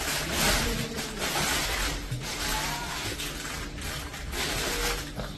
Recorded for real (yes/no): yes